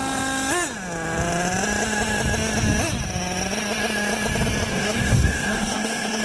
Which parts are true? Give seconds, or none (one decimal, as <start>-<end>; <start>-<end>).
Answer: 0.0-4.7